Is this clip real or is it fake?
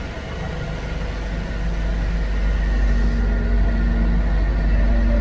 real